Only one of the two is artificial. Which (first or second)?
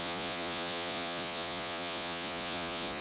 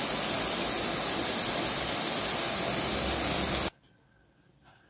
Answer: first